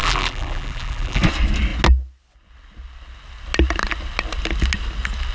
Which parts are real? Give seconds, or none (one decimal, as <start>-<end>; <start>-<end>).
1.2-5.3